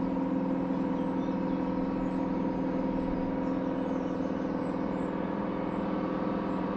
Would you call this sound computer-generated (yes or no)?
no